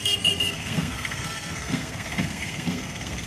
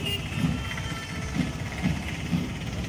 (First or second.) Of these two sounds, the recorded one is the second